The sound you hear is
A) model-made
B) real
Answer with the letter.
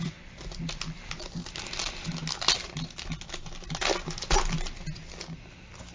B